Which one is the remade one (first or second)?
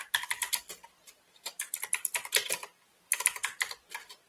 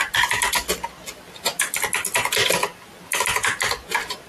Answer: first